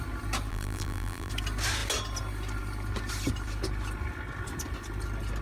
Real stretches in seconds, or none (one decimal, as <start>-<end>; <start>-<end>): 0.0-0.5; 1.3-5.4